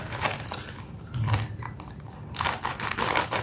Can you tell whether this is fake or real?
real